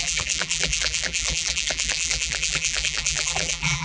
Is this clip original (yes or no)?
no